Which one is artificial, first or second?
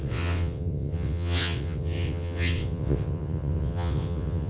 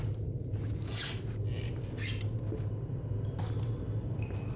first